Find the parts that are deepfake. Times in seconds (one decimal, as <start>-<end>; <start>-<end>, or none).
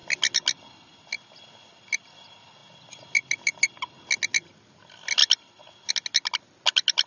none